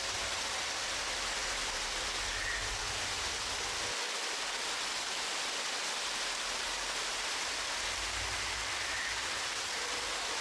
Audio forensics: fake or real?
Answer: real